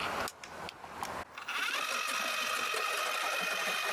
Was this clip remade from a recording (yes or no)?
no